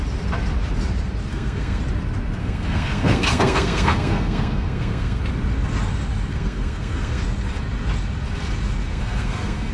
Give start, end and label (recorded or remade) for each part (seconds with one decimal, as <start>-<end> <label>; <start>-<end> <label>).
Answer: 0.0-1.3 recorded; 1.3-1.8 remade; 1.8-2.4 recorded; 2.4-5.2 remade; 5.2-6.3 recorded; 6.3-7.2 remade; 7.2-8.9 recorded; 8.9-9.7 remade